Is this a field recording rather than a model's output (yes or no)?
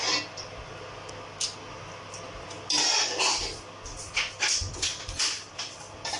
yes